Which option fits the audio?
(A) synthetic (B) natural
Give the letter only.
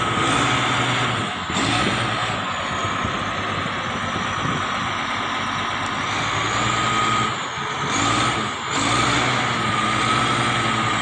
B